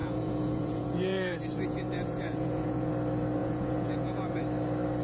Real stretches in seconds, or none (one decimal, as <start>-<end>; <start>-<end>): 2.9-3.4; 4.4-5.0